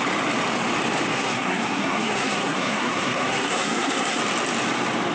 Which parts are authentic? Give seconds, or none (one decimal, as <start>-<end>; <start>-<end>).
0.0-1.1; 4.2-5.1